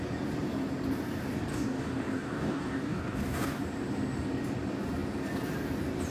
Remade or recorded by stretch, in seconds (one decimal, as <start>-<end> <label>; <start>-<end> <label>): 0.0-1.5 recorded; 1.5-3.6 remade; 3.6-6.1 recorded